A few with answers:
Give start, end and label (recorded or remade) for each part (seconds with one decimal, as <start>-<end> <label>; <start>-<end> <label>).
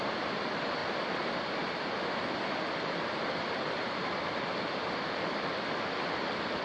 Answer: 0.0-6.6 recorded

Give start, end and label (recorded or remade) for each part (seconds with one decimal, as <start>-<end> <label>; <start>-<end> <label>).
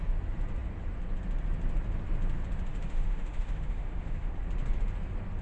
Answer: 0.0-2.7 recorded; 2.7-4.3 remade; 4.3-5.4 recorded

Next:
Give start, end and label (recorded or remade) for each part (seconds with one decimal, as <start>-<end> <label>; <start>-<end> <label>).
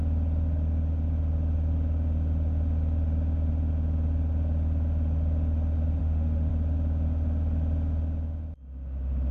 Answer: 0.0-6.0 recorded; 6.0-6.5 remade; 6.5-9.3 recorded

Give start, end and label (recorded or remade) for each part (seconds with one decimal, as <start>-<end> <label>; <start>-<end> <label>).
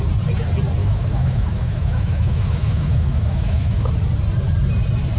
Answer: 0.0-0.8 recorded; 0.8-3.9 remade; 3.9-5.2 recorded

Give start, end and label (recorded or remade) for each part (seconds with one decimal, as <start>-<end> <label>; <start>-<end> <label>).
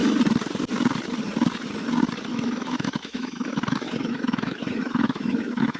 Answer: 0.0-2.3 recorded; 2.3-5.8 remade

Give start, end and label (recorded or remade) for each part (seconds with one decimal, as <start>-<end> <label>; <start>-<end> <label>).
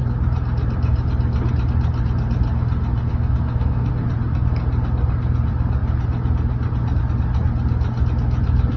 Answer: 0.0-3.1 recorded; 3.1-3.9 remade; 3.9-8.8 recorded